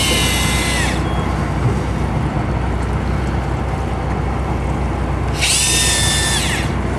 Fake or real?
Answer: real